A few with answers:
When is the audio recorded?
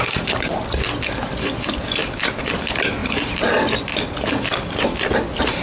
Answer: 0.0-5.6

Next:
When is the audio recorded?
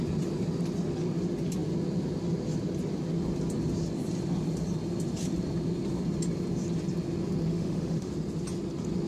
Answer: 0.0-7.5; 8.1-9.1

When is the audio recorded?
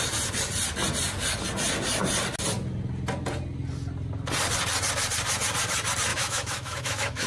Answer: 0.0-6.1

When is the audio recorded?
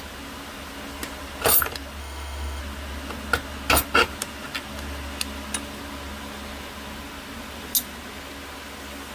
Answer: 0.0-2.0; 2.6-9.1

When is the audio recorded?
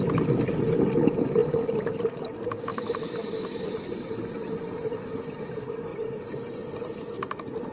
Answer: 0.0-2.7; 3.7-7.7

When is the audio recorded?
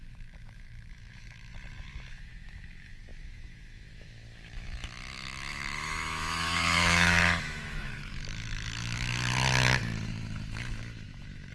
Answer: 1.5-2.1; 9.8-10.4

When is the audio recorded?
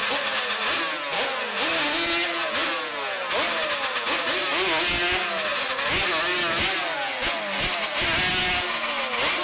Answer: 0.0-9.4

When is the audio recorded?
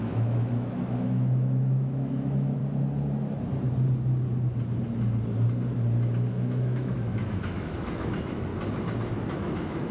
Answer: 2.6-6.3; 8.5-9.1